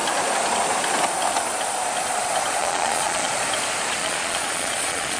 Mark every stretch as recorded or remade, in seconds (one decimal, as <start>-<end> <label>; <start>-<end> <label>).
0.0-2.6 recorded; 2.6-3.3 remade; 3.3-4.0 recorded; 4.0-5.2 remade